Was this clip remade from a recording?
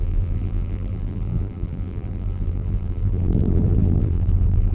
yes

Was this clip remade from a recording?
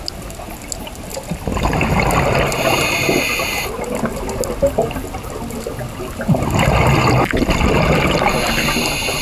no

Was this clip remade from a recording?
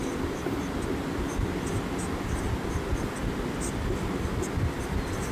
no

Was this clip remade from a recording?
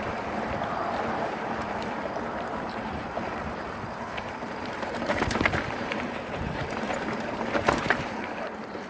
yes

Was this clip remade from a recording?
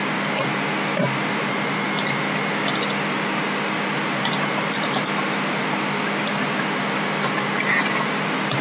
no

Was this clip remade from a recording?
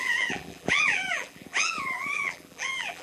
yes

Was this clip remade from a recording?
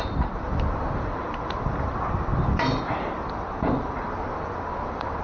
yes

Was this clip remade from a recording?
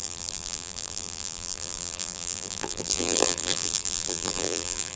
yes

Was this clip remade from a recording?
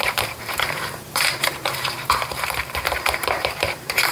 yes